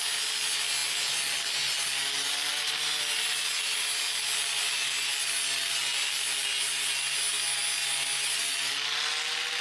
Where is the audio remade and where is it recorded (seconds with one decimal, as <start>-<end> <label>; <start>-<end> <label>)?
0.0-9.6 recorded